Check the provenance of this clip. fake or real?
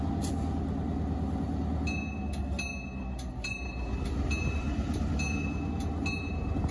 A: real